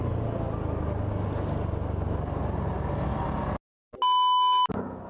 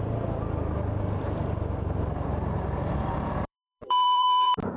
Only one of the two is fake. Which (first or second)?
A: second